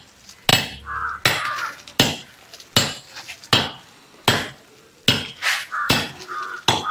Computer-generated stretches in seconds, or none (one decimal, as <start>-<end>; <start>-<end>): 5.6-6.1